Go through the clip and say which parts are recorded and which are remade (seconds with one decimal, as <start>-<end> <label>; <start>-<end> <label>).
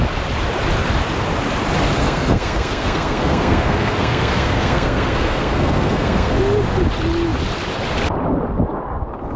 0.0-2.0 recorded; 2.0-6.4 remade; 6.4-9.4 recorded